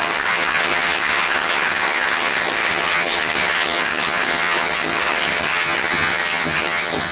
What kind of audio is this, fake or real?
fake